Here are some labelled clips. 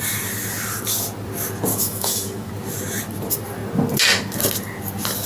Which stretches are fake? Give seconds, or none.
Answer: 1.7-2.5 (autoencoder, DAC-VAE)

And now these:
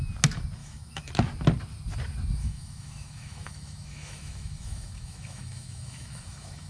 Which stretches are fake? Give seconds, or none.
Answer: 0.6-1.1 (autoencoder, DAC-VAE); 2.4-6.7

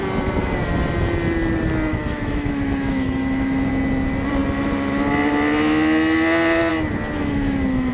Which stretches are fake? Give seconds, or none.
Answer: 1.9-3.7 (autoencoder, DAC-VAE); 7.2-7.9